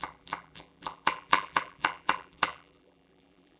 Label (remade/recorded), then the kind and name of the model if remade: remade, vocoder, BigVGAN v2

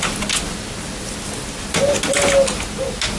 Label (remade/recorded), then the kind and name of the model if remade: recorded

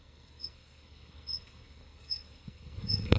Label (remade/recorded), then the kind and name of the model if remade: remade, codec, SNAC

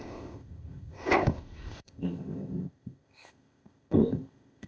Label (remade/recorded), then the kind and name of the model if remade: remade, codec, ZipCodec